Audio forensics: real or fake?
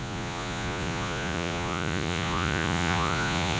fake